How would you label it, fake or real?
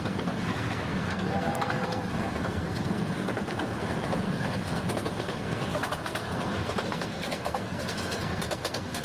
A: fake